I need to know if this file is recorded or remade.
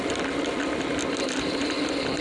recorded